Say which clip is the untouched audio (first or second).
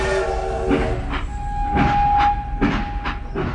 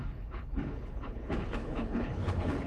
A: first